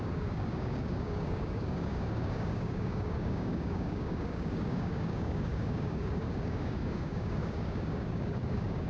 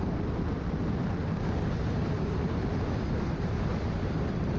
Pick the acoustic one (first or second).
second